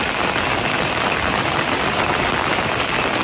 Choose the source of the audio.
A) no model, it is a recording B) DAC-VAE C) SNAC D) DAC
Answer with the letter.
A